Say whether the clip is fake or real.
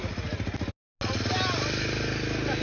real